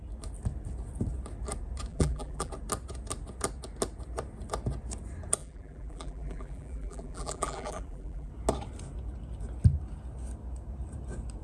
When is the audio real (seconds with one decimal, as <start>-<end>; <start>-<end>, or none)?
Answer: 0.0-1.9; 2.5-5.4; 8.3-11.4